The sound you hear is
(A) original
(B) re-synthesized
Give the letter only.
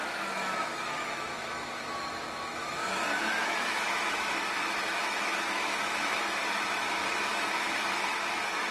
B